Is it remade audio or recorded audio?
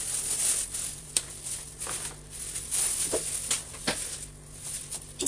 recorded